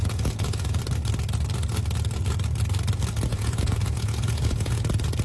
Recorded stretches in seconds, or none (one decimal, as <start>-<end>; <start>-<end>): 0.8-3.3; 4.8-5.2

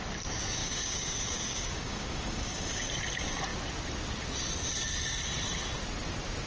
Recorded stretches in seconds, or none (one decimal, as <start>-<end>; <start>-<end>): 0.0-0.6; 2.9-6.5